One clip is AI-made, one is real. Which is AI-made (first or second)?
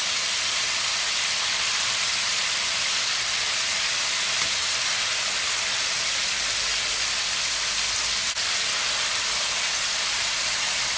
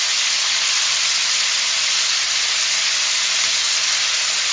first